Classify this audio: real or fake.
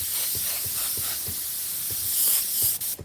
real